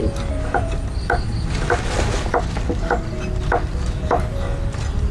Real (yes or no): yes